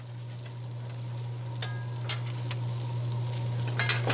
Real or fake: real